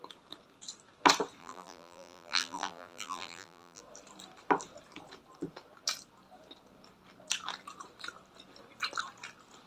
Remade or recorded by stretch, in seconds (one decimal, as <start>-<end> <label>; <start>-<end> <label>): 0.0-1.4 recorded; 1.4-3.8 remade; 3.8-9.7 recorded